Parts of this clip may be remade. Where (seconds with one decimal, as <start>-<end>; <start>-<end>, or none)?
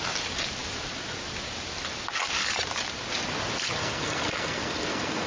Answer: 3.8-5.3